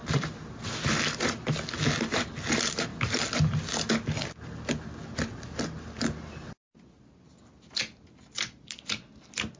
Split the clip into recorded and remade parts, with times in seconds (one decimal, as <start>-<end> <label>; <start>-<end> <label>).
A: 0.0-1.1 remade; 1.1-9.6 recorded